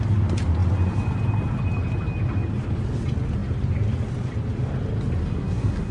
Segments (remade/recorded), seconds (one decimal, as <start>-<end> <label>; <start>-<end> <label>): 0.0-5.2 recorded; 5.2-5.9 remade